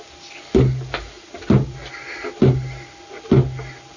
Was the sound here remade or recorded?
recorded